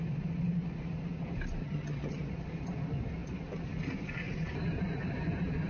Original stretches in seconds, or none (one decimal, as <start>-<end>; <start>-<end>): 0.0-1.6; 2.3-5.7